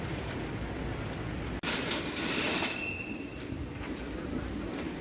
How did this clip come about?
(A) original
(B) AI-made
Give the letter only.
A